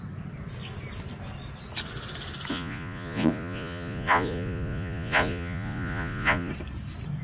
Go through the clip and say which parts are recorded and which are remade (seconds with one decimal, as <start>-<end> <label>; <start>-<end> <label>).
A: 0.0-2.5 recorded; 2.5-6.5 remade; 6.5-7.2 recorded